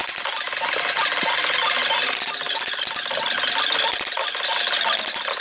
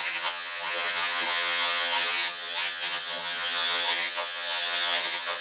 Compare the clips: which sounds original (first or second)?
first